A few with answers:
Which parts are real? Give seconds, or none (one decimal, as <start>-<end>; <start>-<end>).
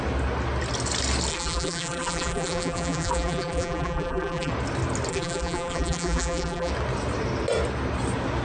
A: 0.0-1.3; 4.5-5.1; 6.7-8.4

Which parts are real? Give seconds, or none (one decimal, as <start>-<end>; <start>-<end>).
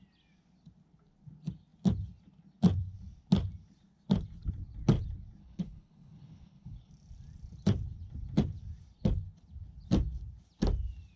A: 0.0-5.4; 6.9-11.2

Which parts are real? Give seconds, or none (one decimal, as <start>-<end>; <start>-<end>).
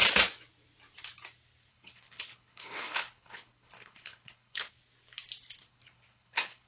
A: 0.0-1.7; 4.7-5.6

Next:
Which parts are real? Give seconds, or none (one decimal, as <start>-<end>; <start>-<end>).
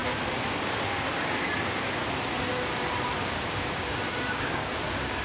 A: 0.0-0.6; 2.0-3.2